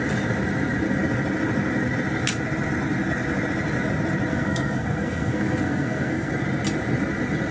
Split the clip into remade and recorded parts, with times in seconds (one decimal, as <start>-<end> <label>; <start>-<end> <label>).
0.0-4.3 recorded; 4.3-6.3 remade; 6.3-7.5 recorded